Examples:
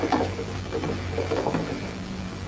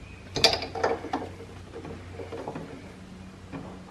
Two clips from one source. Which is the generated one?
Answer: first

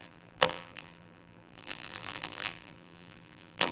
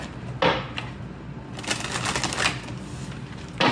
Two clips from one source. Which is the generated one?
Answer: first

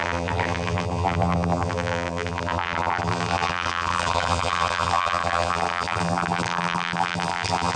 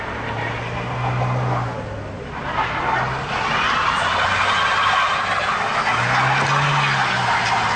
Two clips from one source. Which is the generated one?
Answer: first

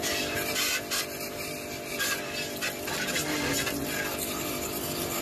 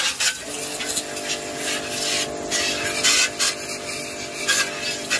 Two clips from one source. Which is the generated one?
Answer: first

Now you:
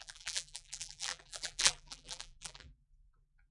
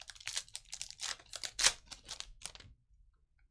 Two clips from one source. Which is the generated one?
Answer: first